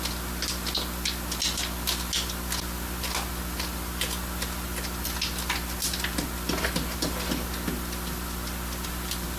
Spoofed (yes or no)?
no